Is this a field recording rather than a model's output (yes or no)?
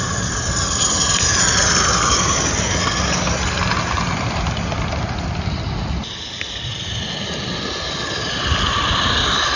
yes